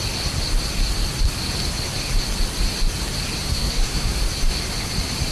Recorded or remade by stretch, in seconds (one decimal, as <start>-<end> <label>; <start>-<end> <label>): 0.0-3.5 recorded; 3.5-4.2 remade; 4.2-5.3 recorded